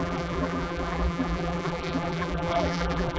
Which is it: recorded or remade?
remade